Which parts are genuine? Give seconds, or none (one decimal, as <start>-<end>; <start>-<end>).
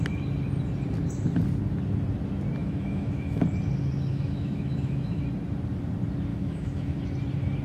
0.0-2.6; 3.4-4.1; 5.2-6.3; 7.0-7.6